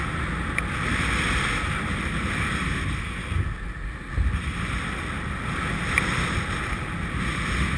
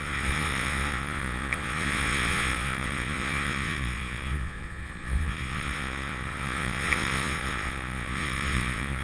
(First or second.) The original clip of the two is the first